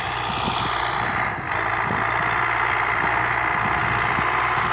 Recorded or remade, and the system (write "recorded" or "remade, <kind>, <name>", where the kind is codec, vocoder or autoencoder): recorded